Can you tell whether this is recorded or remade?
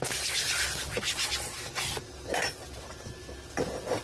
recorded